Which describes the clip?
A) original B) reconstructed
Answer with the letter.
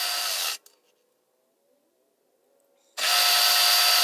A